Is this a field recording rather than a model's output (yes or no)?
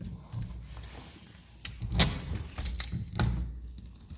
yes